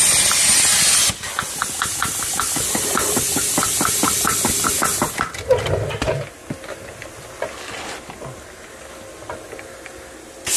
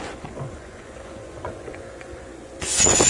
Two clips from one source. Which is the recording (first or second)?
first